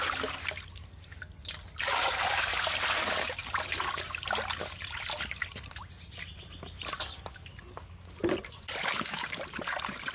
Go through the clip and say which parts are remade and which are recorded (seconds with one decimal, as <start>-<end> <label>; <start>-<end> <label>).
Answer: 0.0-8.8 recorded; 8.8-9.4 remade; 9.4-10.1 recorded